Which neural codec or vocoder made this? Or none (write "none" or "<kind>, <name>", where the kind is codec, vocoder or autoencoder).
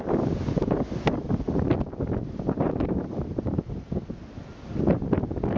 none